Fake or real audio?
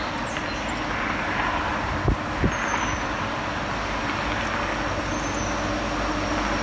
real